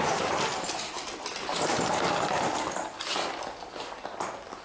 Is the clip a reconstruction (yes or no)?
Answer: no